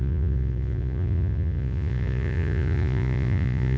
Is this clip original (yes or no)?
no